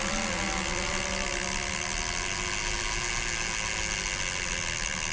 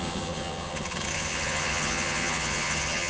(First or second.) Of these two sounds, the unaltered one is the first